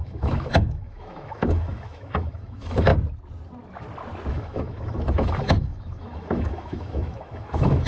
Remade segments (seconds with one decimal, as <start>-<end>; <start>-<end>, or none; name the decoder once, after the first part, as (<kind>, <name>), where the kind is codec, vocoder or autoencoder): 0.0-2.9 (autoencoder, DAC-VAE); 4.3-7.9